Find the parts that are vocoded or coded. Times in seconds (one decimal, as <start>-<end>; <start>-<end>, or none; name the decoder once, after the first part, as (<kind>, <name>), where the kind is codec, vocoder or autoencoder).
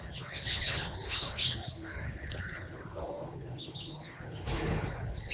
0.0-5.3 (codec, HILCodec)